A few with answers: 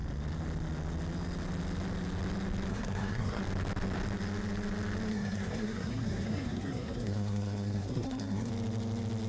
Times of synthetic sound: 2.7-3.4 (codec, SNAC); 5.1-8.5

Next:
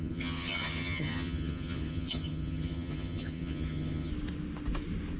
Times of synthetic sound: 0.0-4.1 (vocoder, HiFi-GAN)

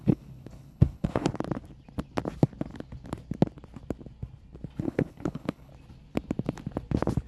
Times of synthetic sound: 0.0-1.3 (codec, HILCodec); 4.8-5.7

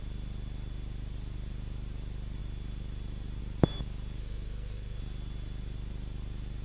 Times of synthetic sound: 4.2-5.0 (codec, SNAC)

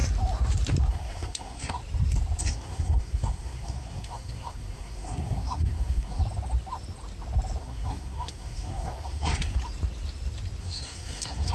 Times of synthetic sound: 0.9-1.8 (codec, SNAC); 2.4-6.2; 7.6-9.6; 10.6-11.5

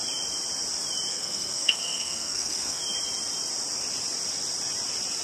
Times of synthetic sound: 1.1-2.8 (codec, SNAC)